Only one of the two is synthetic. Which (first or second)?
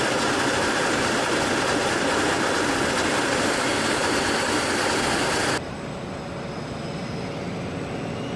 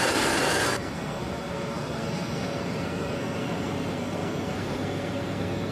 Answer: second